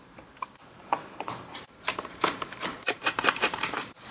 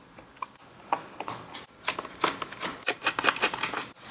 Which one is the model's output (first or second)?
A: first